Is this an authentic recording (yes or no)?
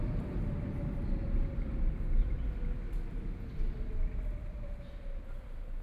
yes